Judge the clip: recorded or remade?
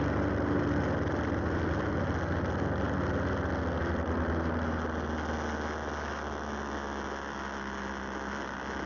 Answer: recorded